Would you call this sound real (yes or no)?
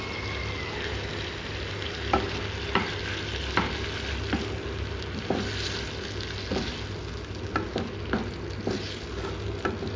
yes